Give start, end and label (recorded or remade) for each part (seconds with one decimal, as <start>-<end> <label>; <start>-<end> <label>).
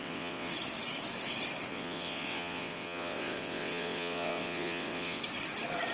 0.0-0.5 remade; 0.5-1.7 recorded; 1.7-5.2 remade; 5.2-5.9 recorded